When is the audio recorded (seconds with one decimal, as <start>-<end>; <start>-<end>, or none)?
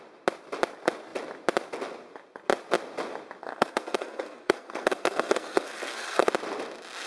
0.0-3.4; 6.3-7.1